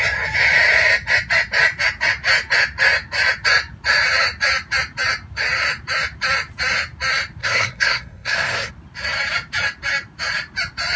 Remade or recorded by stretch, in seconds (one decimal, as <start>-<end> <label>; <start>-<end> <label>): 0.0-7.4 recorded; 7.4-8.7 remade; 8.7-11.0 recorded